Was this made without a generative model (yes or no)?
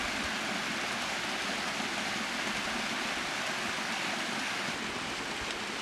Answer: yes